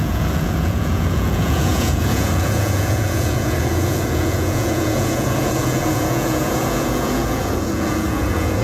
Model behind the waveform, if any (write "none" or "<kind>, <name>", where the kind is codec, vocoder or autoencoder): vocoder, Vocos